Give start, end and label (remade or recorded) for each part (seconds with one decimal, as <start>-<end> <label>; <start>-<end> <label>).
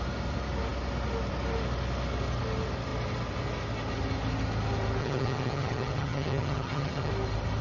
0.0-5.0 recorded; 5.0-7.1 remade; 7.1-7.6 recorded